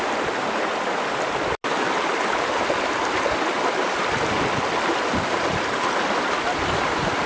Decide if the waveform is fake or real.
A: real